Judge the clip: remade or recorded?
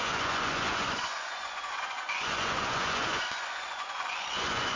remade